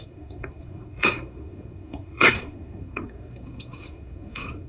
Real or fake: fake